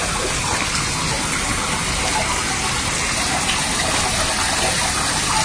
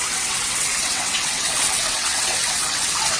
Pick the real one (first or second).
first